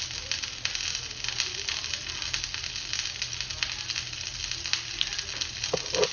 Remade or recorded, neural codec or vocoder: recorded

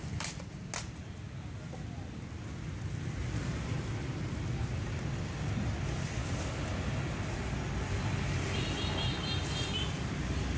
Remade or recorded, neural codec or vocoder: recorded